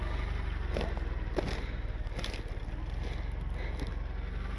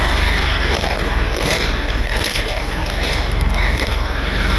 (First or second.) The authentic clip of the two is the first